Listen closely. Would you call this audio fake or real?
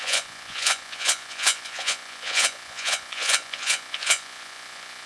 fake